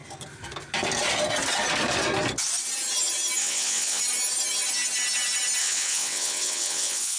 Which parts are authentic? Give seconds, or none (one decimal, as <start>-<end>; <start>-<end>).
0.0-3.4; 4.0-5.6